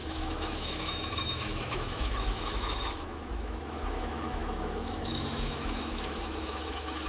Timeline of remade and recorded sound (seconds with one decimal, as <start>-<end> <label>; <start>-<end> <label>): 0.0-7.1 remade